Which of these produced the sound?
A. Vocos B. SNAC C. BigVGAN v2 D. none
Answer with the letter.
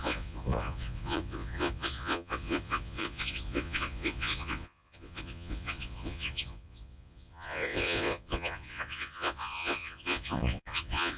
A